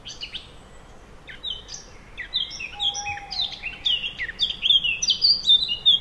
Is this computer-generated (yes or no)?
no